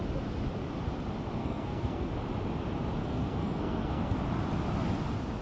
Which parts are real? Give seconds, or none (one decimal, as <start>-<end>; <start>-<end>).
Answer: 0.0-1.4; 2.1-3.0; 4.2-5.4